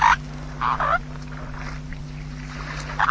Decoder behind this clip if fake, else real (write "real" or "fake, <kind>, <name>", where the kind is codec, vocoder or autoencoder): fake, vocoder, BigVGAN v2